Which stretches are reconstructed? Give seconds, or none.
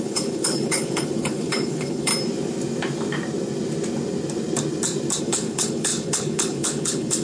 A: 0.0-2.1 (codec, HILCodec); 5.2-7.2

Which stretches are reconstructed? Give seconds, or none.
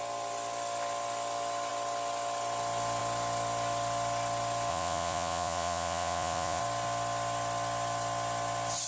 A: 4.7-6.6 (vocoder, Vocos)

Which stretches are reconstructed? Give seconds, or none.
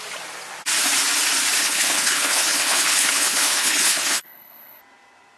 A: 1.6-4.8 (codec, HILCodec)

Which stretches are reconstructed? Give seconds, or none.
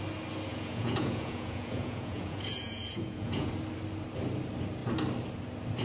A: 0.5-3.5 (vocoder, Vocos)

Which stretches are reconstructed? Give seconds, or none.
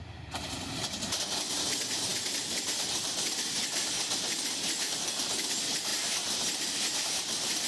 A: none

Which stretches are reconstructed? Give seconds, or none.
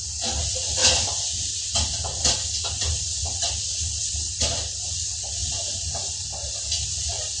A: none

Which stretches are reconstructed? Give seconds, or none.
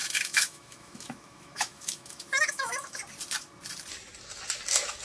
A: 0.0-3.0 (autoencoder, DAC-VAE)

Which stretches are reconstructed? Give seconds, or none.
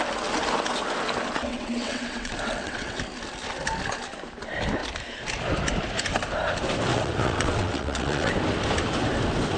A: 1.5-3.0 (vocoder, WaveNeXt); 6.9-8.3